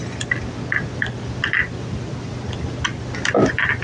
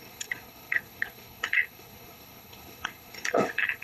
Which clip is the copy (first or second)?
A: second